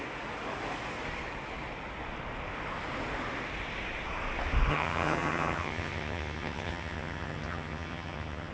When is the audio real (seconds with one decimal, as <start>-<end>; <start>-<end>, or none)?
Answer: 0.0-4.7